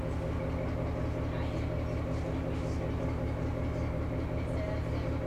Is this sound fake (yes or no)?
no